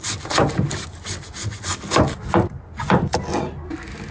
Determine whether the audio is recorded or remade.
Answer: recorded